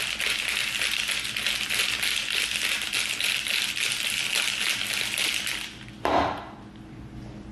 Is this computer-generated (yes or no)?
no